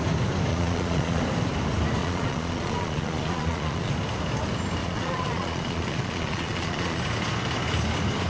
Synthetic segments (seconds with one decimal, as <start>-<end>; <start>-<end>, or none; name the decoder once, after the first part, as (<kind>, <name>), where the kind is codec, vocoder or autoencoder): 0.5-1.2 (vocoder, Vocos); 2.0-3.9; 4.8-7.0